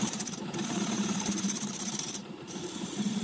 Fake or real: fake